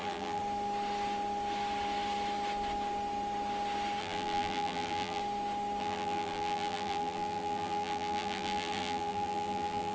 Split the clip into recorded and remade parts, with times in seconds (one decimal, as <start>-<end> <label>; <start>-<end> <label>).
0.0-0.4 remade; 0.4-4.0 recorded; 4.0-5.2 remade; 5.2-5.8 recorded; 5.8-9.9 remade